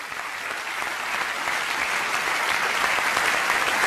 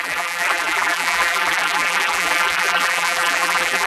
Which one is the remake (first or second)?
second